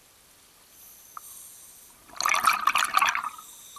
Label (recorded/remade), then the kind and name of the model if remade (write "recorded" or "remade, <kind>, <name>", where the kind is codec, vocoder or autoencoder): recorded